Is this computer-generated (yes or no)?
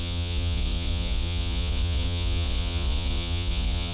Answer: yes